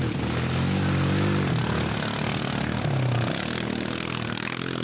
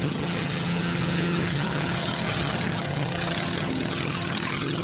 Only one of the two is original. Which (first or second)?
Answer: first